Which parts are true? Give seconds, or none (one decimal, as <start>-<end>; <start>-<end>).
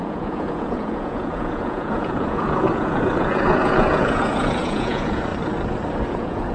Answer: 5.3-6.1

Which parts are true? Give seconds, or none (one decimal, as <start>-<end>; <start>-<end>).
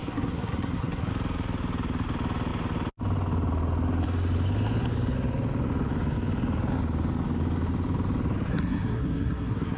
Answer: 1.1-8.5